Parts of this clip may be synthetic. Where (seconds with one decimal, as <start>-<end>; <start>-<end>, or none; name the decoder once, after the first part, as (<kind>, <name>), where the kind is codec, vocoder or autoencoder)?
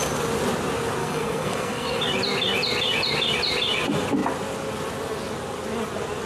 1.0-2.0 (codec, SNAC)